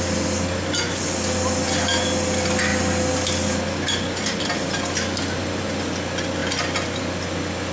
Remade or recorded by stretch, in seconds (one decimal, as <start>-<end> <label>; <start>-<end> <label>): 0.0-7.7 recorded